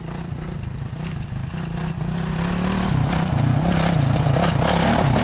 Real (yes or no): yes